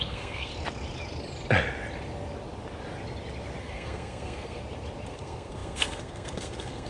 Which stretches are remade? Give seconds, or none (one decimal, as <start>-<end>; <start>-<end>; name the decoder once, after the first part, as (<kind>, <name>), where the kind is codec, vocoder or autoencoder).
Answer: 0.0-0.5 (codec, SNAC); 3.6-4.6; 5.1-6.9